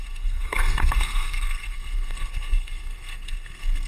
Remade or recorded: remade